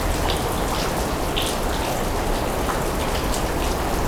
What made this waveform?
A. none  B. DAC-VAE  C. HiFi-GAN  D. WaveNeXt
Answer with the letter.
A